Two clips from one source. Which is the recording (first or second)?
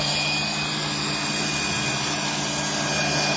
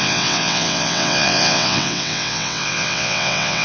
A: first